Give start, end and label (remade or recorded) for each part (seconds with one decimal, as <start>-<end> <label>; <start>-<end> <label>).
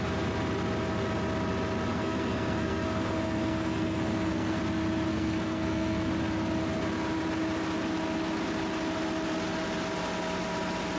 0.0-1.9 recorded; 1.9-4.6 remade; 4.6-5.1 recorded; 5.1-6.1 remade; 6.1-11.0 recorded